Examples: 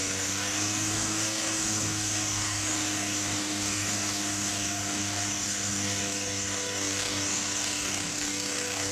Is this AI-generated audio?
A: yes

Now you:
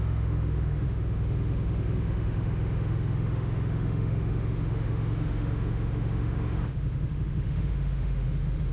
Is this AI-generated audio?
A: yes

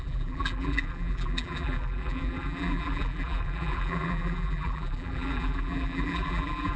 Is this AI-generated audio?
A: yes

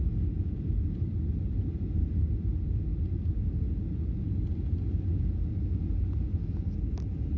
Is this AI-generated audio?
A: no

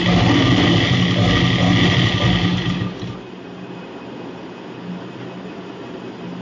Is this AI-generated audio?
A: no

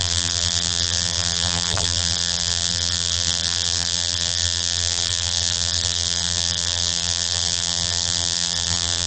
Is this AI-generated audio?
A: yes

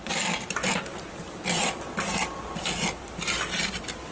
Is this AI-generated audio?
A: no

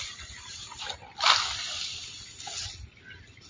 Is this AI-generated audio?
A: no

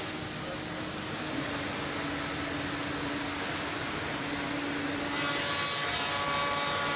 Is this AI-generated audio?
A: no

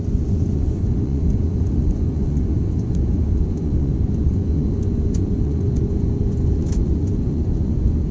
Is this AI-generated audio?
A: yes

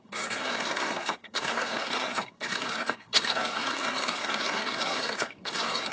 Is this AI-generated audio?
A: yes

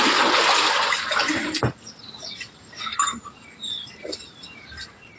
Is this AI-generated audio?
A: no